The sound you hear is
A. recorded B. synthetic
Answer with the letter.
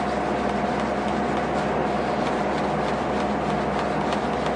A